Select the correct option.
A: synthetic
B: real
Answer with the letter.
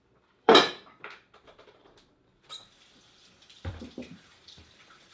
A